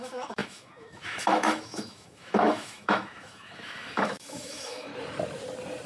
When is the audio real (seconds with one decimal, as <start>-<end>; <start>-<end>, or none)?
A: 4.9-5.9